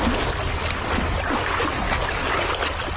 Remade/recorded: recorded